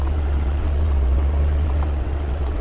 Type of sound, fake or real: fake